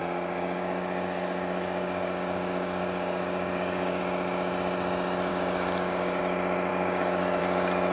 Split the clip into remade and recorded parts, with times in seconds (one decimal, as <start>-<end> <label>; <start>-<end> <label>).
0.0-4.0 remade; 4.0-5.3 recorded; 5.3-6.2 remade; 6.2-6.7 recorded; 6.7-7.4 remade; 7.4-7.9 recorded